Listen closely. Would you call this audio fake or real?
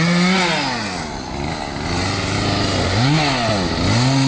real